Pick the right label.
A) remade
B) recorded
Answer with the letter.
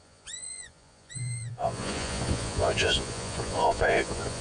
A